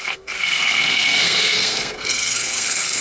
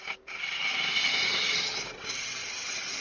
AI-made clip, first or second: first